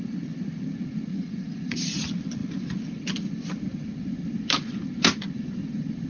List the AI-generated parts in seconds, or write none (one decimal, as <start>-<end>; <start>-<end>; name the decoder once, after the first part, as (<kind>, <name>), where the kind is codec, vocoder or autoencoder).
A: 1.1-1.7 (vocoder, Vocos)